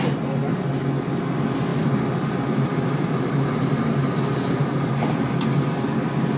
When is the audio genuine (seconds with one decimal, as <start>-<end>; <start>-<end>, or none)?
0.0-1.7; 5.3-6.4